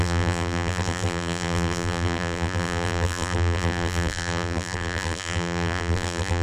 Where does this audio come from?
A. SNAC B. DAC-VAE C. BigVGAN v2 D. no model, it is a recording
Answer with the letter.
C